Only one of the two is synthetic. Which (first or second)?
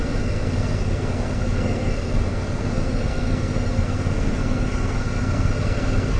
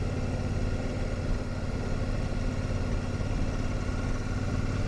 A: first